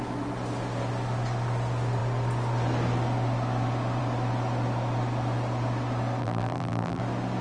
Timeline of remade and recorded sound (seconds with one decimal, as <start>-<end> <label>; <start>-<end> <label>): 0.0-6.2 recorded; 6.2-7.0 remade; 7.0-7.4 recorded